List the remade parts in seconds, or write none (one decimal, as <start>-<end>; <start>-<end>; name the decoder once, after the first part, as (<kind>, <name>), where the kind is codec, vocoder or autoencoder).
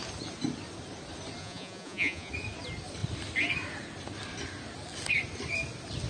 1.4-2.3 (vocoder, Vocos)